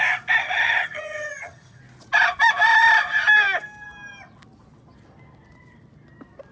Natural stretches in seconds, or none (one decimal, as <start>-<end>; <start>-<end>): 0.0-0.4; 1.8-6.5